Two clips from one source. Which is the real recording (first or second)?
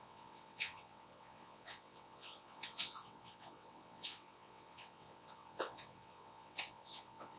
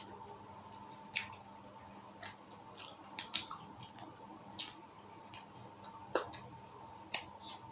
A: second